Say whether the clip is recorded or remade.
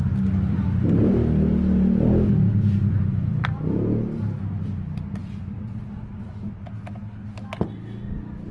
recorded